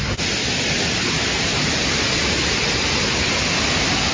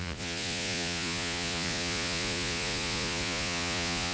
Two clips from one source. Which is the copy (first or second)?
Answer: second